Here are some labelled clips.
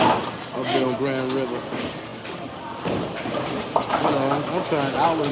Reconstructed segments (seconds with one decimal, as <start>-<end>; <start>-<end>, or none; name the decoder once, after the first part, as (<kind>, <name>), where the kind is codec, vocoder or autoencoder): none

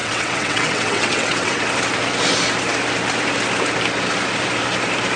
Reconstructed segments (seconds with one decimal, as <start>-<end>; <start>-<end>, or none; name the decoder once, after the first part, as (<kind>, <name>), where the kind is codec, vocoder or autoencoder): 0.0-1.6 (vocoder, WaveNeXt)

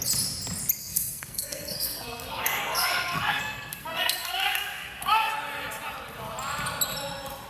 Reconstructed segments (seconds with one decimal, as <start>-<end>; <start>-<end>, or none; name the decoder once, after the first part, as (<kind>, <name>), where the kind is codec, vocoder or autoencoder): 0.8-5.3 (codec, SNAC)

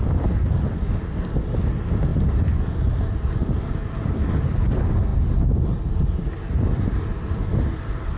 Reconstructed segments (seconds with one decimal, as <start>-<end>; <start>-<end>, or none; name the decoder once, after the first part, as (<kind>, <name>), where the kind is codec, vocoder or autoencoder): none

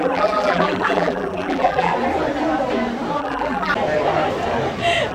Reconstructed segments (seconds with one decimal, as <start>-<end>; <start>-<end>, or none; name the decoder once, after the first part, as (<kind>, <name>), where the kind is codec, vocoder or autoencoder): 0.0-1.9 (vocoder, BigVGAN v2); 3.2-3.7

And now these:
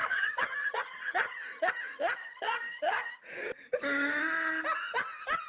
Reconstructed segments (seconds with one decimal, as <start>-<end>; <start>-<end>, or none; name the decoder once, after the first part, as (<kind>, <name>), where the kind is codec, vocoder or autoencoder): 0.0-1.7 (vocoder, HiFi-GAN); 2.2-3.1

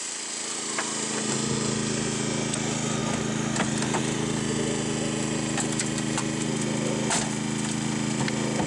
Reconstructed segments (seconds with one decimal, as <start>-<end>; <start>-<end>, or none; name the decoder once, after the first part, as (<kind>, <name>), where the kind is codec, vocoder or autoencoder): none